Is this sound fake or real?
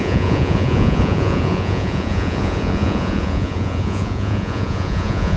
fake